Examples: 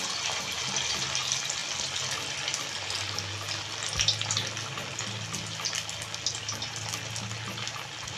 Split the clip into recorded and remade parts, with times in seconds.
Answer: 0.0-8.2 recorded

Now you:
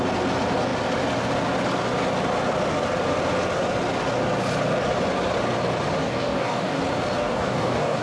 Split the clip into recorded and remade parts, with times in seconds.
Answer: 0.0-6.0 recorded; 6.0-6.8 remade; 6.8-7.2 recorded; 7.2-8.0 remade

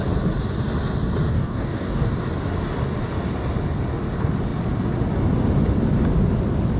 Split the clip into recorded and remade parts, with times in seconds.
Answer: 0.0-1.3 recorded; 1.3-2.2 remade; 2.2-6.8 recorded

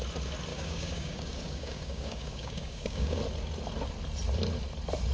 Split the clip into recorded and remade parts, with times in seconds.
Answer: 0.0-0.5 recorded; 0.5-3.2 remade; 3.2-5.1 recorded